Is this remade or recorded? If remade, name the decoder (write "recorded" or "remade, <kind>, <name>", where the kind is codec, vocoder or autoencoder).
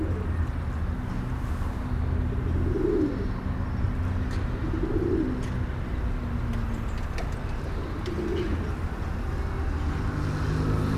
recorded